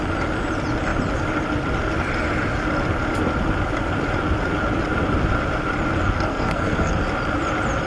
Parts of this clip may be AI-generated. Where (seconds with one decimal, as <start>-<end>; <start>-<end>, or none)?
6.3-6.9